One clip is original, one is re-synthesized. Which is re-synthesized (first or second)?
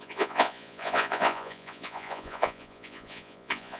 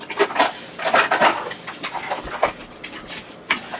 first